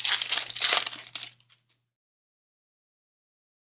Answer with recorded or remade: recorded